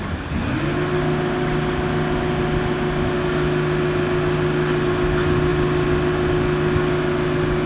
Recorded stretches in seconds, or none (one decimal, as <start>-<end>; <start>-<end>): 0.0-7.7